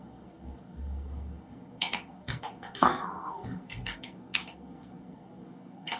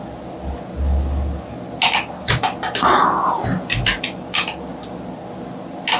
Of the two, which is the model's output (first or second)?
first